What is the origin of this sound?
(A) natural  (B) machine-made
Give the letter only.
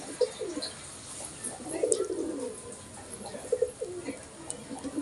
A